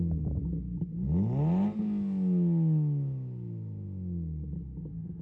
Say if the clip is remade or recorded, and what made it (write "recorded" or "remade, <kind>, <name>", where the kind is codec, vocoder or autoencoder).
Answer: recorded